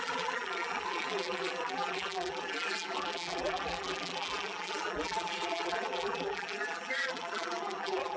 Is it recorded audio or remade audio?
remade